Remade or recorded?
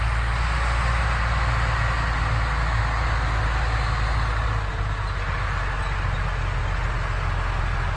recorded